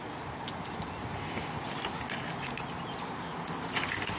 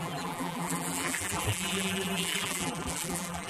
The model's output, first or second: second